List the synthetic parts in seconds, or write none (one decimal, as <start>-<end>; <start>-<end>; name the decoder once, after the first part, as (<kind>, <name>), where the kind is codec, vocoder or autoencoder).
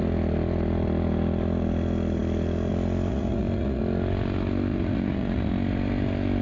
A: 3.1-3.8 (vocoder, Vocos); 4.7-5.5